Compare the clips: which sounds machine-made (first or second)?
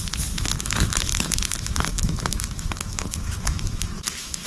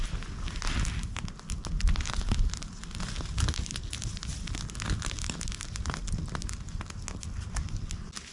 first